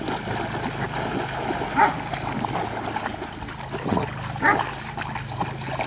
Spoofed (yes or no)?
no